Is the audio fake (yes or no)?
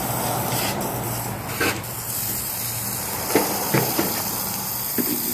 yes